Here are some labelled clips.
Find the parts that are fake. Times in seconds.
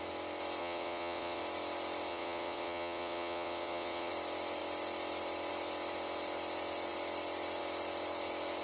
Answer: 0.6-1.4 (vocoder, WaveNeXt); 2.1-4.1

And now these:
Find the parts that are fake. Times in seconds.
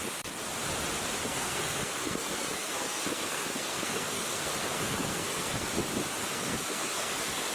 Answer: 1.2-5.7 (codec, SNAC); 6.2-7.5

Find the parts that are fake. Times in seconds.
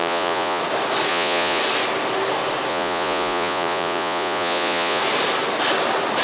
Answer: 0.0-0.6 (vocoder, Vocos); 1.1-1.6; 2.7-5.0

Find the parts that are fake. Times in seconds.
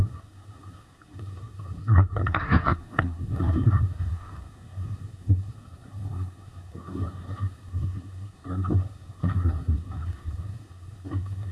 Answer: 0.0-11.5 (codec, SNAC)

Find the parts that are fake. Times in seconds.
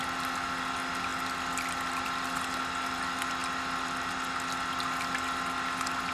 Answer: none